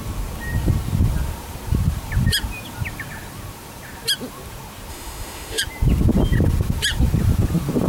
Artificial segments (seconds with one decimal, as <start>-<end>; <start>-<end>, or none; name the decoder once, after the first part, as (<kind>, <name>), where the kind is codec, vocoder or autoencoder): 4.9-5.6 (autoencoder, DAC-VAE)